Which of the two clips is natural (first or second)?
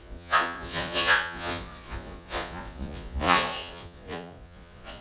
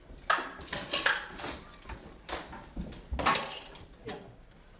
second